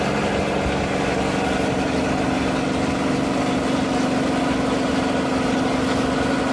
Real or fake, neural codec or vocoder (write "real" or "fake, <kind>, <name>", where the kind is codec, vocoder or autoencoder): real